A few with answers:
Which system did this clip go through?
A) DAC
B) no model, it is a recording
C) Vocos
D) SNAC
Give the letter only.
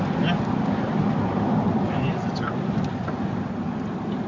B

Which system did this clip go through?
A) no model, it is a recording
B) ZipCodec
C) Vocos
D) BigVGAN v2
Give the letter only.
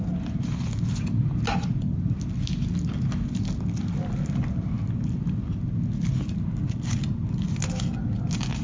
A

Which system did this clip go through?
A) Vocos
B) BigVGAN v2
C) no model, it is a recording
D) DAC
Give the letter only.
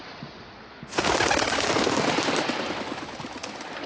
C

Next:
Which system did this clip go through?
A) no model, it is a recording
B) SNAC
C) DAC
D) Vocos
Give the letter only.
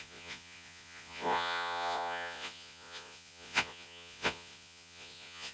D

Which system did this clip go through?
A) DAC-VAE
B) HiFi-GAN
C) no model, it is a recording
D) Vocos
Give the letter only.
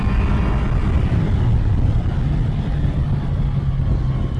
C